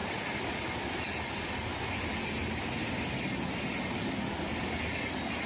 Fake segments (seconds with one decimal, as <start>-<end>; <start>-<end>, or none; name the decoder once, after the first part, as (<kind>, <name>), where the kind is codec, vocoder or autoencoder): none